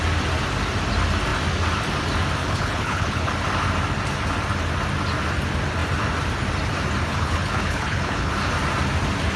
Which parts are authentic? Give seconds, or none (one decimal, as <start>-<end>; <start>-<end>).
0.0-2.4; 3.3-7.1; 8.3-9.4